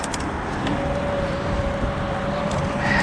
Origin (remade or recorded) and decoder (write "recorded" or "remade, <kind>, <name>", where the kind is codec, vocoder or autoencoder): recorded